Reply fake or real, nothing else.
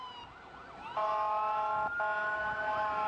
real